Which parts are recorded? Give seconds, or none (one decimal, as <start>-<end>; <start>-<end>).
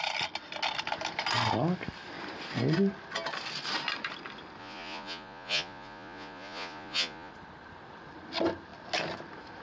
0.0-4.6; 7.3-9.6